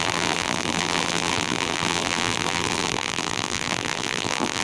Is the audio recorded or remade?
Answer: remade